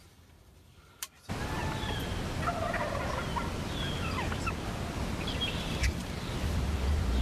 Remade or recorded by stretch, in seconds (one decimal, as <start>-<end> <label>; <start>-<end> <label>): 0.0-7.2 recorded